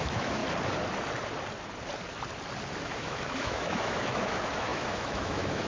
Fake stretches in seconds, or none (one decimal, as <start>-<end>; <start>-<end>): 0.0-0.4; 2.8-5.7